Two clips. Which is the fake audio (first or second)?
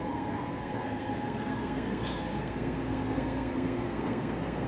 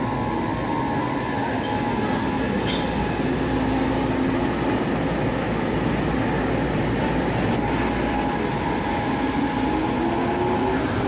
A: first